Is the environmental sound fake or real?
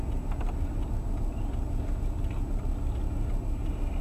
real